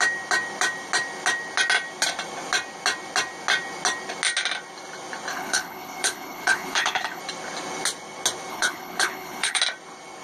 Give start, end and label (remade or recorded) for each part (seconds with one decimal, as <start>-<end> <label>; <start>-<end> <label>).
0.0-5.3 recorded; 5.3-7.2 remade; 7.2-8.5 recorded; 8.5-9.6 remade; 9.6-10.2 recorded